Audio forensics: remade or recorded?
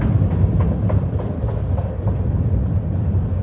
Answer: recorded